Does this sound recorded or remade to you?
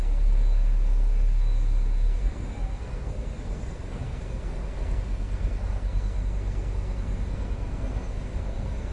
remade